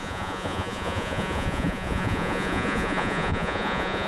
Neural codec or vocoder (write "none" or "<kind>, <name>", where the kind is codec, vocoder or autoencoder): vocoder, Vocos